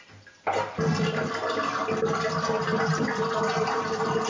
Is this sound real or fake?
real